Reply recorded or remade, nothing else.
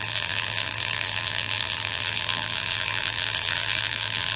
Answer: remade